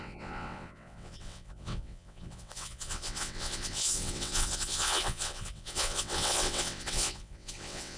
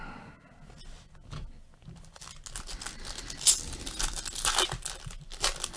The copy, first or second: first